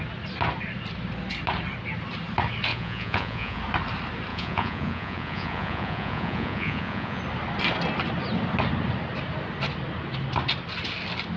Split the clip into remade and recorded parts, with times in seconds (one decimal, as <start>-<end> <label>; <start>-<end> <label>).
0.0-2.7 recorded; 2.7-3.6 remade; 3.6-4.3 recorded; 4.3-7.2 remade; 7.2-11.4 recorded